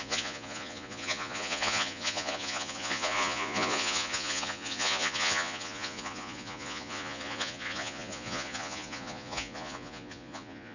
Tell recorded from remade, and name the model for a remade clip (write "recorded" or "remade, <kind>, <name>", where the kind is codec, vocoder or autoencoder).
remade, vocoder, Vocos